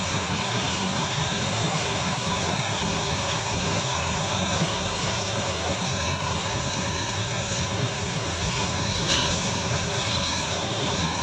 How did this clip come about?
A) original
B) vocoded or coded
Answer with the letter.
B